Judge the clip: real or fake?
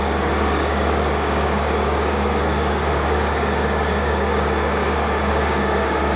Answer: fake